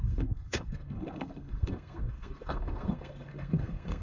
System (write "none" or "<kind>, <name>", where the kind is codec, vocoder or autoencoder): codec, SNAC